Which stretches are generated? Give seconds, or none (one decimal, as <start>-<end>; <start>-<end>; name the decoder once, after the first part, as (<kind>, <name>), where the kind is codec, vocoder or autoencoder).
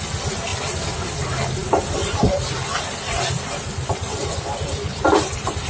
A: none